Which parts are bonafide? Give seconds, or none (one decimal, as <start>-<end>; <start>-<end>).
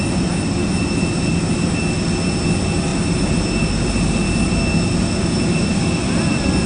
0.0-6.7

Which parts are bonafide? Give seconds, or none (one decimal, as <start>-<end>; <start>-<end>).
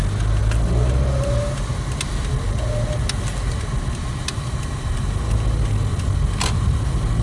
0.0-7.2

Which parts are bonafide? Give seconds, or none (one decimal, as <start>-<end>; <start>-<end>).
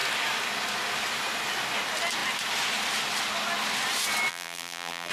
0.0-4.3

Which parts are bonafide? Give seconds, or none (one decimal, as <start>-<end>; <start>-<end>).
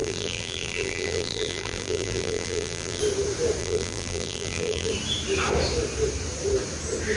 3.0-3.6; 4.9-7.2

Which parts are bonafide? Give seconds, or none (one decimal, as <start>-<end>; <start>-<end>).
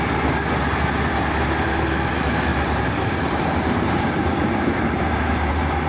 0.0-2.5; 5.5-5.9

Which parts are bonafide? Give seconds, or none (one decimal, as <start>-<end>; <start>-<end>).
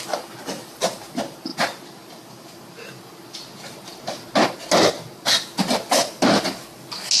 0.0-1.5; 3.0-7.2